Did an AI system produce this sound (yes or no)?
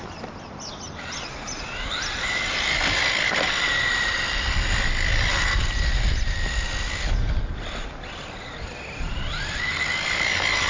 no